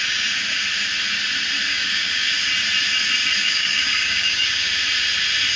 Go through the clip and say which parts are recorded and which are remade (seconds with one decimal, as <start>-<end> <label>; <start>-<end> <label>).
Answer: 0.0-1.7 recorded; 1.7-2.3 remade; 2.3-3.4 recorded; 3.4-4.7 remade; 4.7-5.6 recorded